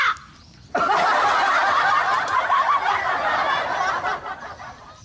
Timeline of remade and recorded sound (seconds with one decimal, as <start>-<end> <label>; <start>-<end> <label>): 0.0-5.0 recorded